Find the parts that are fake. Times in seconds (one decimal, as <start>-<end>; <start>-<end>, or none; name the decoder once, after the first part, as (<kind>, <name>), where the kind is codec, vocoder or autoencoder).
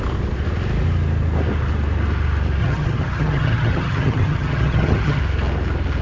2.6-5.2 (vocoder, HiFi-GAN)